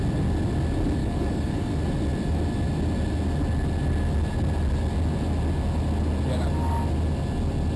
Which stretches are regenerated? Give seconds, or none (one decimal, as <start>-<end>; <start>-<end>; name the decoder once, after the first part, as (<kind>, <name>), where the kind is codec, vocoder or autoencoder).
1.0-1.7 (codec, DAC)